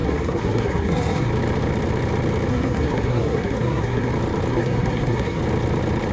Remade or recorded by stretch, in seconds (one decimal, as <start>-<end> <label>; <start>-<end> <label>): 0.0-1.3 remade; 1.3-2.5 recorded; 2.5-4.1 remade; 4.1-4.5 recorded; 4.5-5.4 remade; 5.4-6.1 recorded